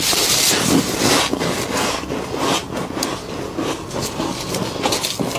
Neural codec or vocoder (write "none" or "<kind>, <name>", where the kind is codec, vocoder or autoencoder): none